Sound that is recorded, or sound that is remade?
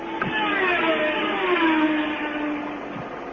recorded